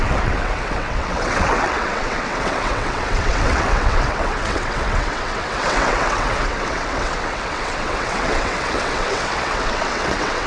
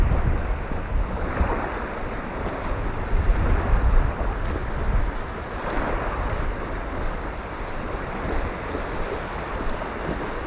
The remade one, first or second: first